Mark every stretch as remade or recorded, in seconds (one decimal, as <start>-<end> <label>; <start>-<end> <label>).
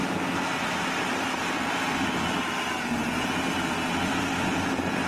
0.0-5.1 recorded